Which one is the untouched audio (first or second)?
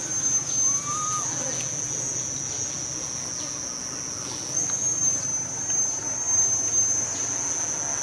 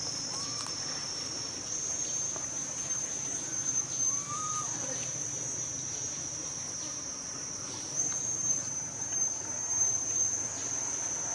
first